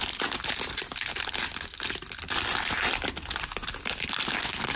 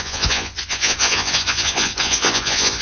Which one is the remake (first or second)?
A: second